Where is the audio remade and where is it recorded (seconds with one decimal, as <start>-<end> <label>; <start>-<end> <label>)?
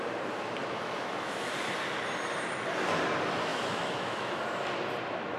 0.0-0.6 recorded; 0.6-1.5 remade; 1.5-3.5 recorded; 3.5-4.4 remade; 4.4-5.4 recorded